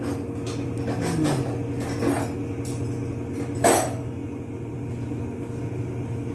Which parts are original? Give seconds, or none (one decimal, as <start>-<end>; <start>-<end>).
0.0-6.3